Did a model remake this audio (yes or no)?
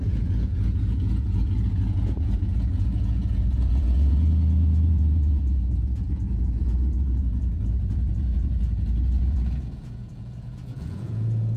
yes